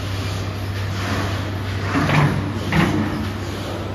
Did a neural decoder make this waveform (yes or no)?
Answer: no